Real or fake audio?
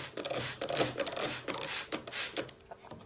real